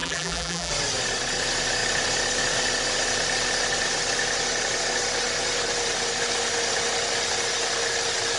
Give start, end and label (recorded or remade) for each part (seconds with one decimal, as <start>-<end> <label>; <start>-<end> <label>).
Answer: 0.0-0.7 remade; 0.7-8.4 recorded